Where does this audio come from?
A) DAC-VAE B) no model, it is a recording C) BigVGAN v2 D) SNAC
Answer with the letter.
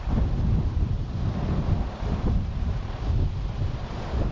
C